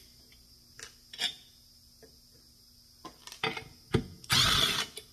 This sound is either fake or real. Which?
real